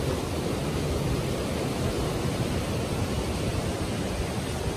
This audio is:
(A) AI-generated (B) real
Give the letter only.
B